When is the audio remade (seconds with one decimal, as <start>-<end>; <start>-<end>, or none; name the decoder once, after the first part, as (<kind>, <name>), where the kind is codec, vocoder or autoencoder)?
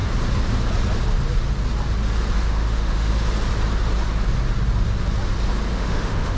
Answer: 2.4-3.1 (autoencoder, DAC-VAE); 5.7-6.4